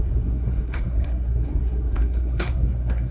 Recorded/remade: remade